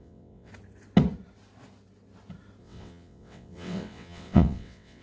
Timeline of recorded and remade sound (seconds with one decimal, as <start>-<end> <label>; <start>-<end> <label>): 0.0-0.5 remade; 0.5-2.6 recorded; 2.6-5.0 remade